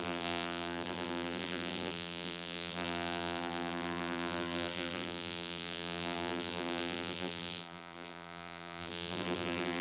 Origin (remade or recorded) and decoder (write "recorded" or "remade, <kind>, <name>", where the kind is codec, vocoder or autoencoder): remade, vocoder, BigVGAN v2